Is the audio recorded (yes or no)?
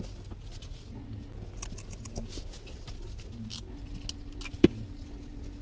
yes